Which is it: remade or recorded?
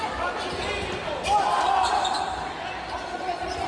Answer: recorded